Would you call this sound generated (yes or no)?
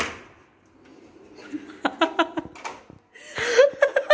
no